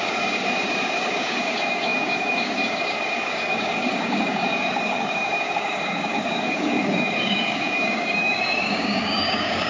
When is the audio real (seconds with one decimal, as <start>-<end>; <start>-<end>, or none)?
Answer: none